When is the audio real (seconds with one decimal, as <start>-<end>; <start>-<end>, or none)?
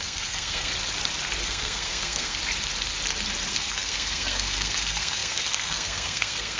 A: 0.7-1.4; 2.4-3.5